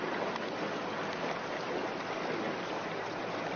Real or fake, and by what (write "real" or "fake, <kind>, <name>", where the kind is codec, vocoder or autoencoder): real